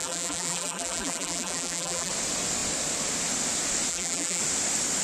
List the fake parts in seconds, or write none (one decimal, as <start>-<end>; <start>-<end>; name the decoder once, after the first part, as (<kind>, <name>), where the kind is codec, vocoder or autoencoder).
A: 0.0-2.1 (vocoder, BigVGAN v2); 3.9-4.4